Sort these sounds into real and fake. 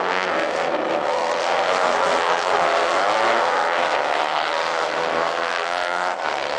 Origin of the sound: fake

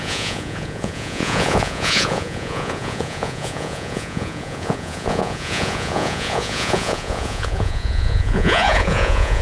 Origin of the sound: fake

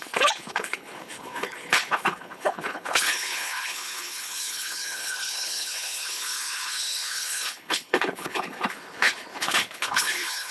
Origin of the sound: fake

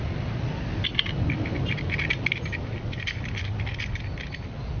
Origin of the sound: real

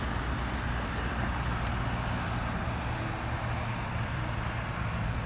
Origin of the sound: real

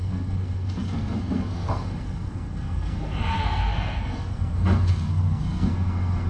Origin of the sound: fake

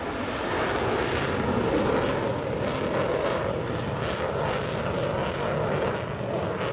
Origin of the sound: real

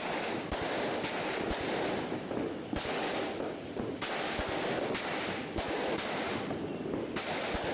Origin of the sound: real